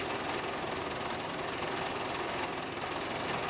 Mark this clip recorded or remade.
recorded